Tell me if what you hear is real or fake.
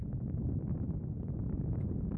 real